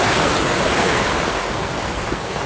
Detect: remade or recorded remade